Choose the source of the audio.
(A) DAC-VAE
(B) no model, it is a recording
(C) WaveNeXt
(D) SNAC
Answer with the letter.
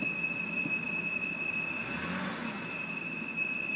B